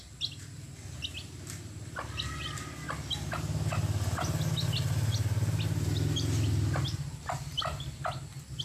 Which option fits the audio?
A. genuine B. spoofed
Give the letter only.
A